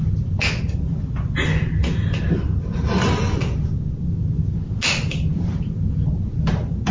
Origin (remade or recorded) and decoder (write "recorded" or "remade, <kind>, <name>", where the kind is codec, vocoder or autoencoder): recorded